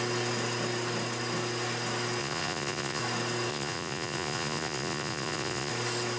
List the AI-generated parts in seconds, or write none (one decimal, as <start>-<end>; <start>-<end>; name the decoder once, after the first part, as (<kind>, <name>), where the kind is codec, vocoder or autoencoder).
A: 2.2-3.0 (vocoder, Vocos); 3.5-5.7